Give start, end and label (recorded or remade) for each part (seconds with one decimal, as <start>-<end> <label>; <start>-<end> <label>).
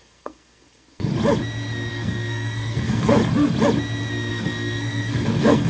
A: 0.0-1.1 remade; 1.1-1.9 recorded; 1.9-3.2 remade; 3.2-4.3 recorded; 4.3-5.7 remade